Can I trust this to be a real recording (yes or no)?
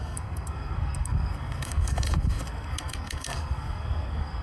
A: no